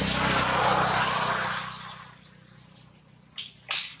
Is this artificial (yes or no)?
no